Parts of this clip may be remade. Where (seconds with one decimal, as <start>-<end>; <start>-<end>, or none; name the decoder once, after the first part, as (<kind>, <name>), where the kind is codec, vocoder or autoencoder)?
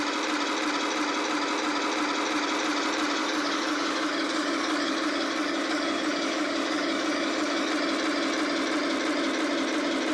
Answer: 3.2-7.7 (codec, DAC)